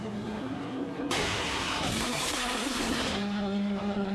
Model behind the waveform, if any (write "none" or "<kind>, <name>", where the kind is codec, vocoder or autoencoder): codec, SNAC